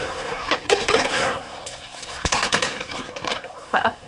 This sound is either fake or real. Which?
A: fake